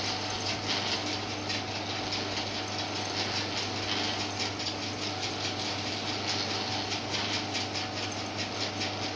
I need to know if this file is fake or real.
real